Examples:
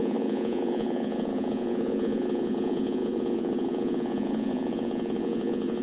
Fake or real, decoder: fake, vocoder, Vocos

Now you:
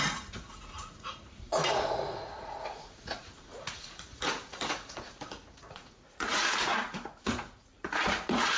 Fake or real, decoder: fake, vocoder, Vocos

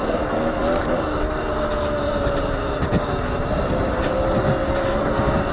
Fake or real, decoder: real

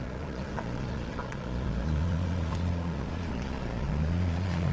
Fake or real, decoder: fake, vocoder, Vocos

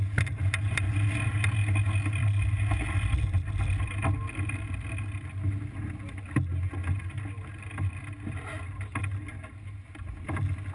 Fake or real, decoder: real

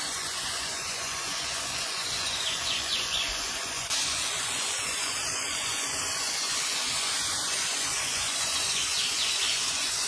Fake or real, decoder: fake, vocoder, Vocos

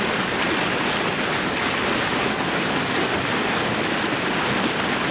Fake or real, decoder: real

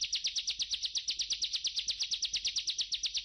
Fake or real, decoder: real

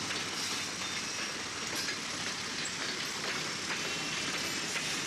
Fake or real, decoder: real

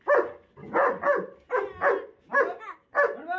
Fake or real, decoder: real